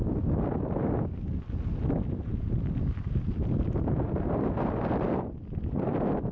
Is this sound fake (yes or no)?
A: no